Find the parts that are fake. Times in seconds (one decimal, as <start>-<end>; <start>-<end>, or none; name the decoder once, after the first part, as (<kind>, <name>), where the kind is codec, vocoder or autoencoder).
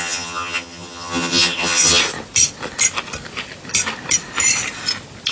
0.0-2.0 (vocoder, HiFi-GAN)